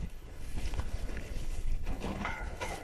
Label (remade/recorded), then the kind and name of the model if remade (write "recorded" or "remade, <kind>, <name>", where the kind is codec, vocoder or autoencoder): remade, codec, HILCodec